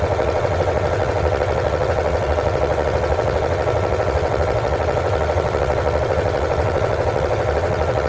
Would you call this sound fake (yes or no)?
yes